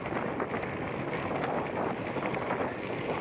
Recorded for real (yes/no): yes